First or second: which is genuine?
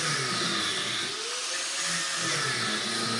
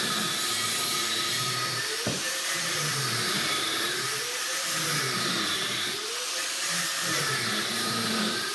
first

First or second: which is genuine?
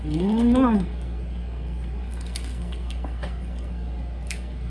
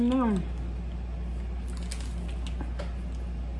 second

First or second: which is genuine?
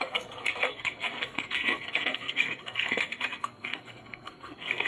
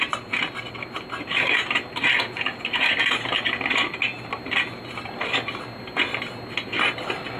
second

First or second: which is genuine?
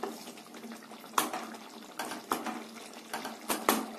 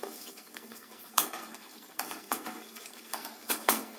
first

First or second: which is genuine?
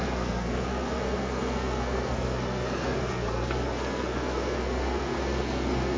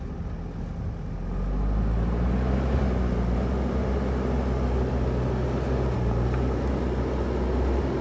second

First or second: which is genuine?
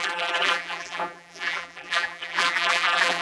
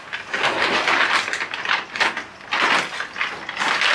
second